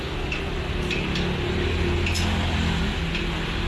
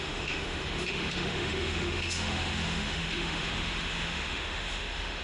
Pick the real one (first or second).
first